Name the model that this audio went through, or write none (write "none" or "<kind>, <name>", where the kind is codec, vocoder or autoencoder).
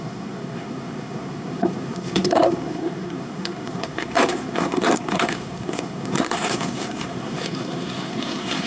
codec, SNAC